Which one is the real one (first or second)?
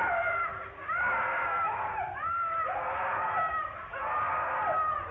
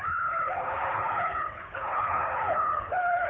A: first